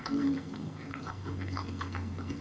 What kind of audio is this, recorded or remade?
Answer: remade